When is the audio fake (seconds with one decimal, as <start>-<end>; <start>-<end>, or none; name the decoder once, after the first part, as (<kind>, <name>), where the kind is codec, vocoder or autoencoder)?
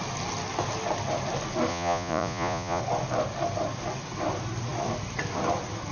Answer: 1.7-2.8 (vocoder, Vocos)